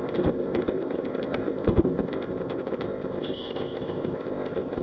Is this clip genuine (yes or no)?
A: no